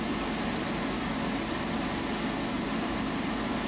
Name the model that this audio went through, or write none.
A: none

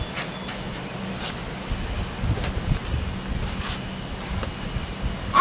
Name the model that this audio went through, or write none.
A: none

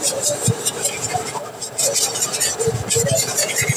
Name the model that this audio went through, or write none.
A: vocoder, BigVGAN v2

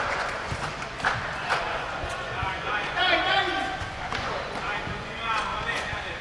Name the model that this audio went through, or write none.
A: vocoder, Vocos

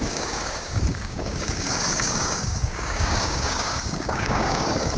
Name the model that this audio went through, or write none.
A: codec, DAC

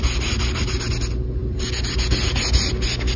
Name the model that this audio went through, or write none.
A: none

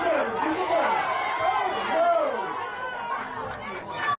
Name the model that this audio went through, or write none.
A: none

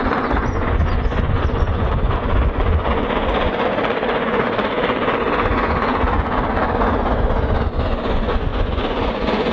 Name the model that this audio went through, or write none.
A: vocoder, Vocos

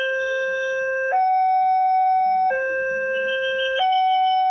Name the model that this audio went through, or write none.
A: codec, DAC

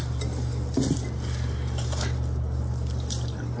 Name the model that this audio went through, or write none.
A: none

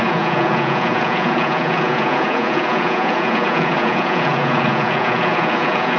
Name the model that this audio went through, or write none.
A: vocoder, Vocos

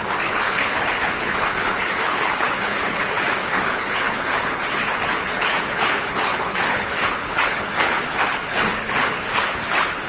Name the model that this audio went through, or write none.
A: codec, HILCodec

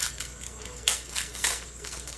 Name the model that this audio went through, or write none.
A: codec, SNAC